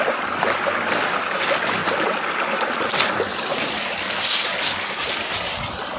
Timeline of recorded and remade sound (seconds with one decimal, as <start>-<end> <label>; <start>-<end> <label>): 0.0-3.3 recorded; 3.3-3.8 remade; 3.8-6.0 recorded

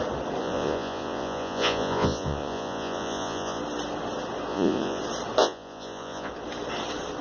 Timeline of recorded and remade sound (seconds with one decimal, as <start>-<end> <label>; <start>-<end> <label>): 0.0-0.4 recorded; 0.4-3.6 remade; 3.6-4.5 recorded; 4.5-5.0 remade; 5.0-5.4 recorded; 5.4-6.3 remade; 6.3-7.2 recorded